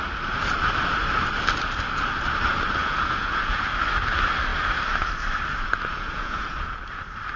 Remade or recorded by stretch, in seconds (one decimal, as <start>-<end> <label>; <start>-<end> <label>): 0.0-2.8 recorded; 2.8-3.7 remade; 3.7-5.9 recorded; 5.9-6.8 remade; 6.8-7.4 recorded